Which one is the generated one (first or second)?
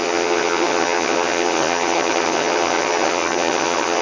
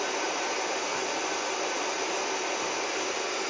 first